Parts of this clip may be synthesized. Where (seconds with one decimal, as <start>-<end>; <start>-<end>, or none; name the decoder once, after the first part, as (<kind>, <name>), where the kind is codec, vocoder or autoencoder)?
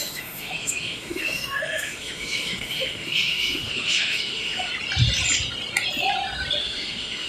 0.0-4.7 (autoencoder, DAC-VAE); 6.6-7.3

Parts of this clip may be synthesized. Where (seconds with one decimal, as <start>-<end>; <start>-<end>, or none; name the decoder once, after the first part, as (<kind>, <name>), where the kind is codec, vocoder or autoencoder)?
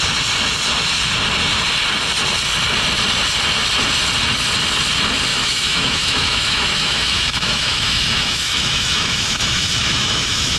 5.3-10.6 (autoencoder, DAC-VAE)